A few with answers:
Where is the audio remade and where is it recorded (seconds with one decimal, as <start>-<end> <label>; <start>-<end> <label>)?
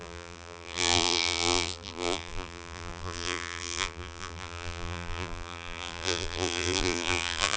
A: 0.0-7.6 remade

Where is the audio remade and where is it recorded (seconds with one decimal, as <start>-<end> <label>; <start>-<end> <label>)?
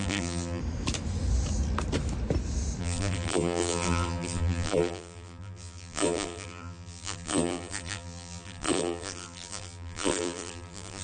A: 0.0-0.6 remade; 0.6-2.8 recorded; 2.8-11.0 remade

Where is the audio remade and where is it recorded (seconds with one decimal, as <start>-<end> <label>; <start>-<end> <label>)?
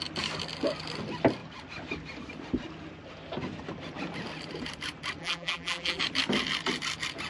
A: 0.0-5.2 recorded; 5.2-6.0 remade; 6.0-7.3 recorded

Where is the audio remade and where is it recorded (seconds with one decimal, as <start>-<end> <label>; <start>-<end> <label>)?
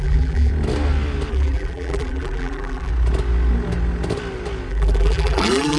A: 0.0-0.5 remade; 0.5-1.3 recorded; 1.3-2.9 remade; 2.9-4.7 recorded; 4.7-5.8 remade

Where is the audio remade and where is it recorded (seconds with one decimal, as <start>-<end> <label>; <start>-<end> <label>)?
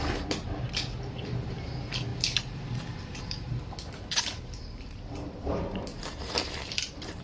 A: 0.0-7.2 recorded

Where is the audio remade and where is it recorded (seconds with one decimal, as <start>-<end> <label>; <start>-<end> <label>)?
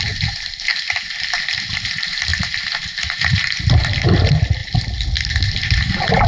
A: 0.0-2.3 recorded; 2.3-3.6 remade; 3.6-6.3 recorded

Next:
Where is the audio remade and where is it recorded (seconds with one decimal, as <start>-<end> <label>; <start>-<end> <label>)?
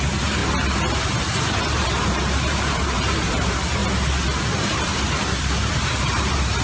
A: 0.0-0.4 remade; 0.4-1.6 recorded; 1.6-3.8 remade; 3.8-4.5 recorded; 4.5-6.6 remade